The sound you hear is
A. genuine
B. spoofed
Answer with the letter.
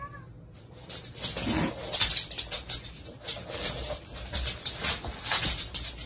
A